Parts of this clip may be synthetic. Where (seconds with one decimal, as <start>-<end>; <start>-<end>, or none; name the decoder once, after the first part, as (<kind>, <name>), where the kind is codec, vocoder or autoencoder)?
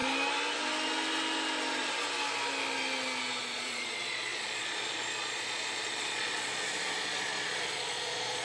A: 3.4-8.4 (vocoder, Vocos)